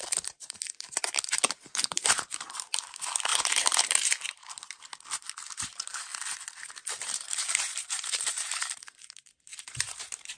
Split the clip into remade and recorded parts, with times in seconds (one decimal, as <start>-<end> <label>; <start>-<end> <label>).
0.0-6.1 remade; 6.1-7.0 recorded; 7.0-10.4 remade